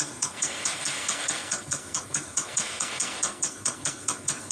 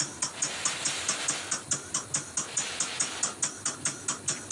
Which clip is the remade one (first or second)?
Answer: first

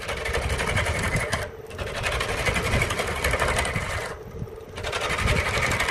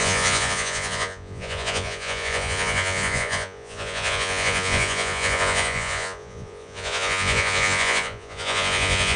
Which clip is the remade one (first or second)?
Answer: second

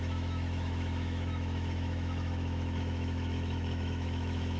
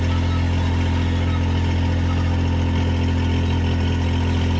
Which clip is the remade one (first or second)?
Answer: first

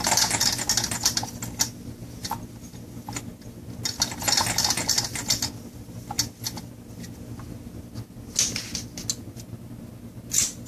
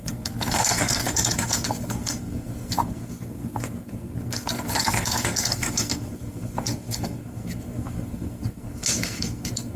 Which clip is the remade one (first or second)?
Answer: second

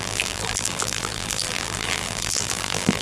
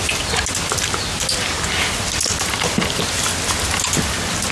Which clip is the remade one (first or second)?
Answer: first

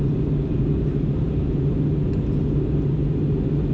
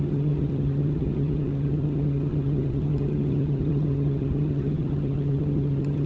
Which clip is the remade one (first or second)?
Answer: second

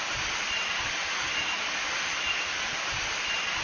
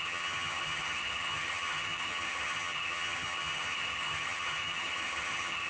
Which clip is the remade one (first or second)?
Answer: second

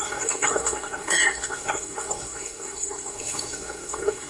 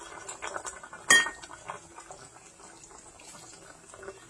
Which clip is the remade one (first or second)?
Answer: first